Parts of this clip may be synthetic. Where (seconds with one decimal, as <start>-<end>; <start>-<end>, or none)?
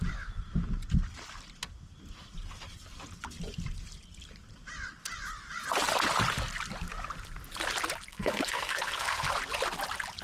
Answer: 8.1-9.3